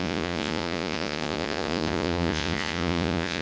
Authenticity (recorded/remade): remade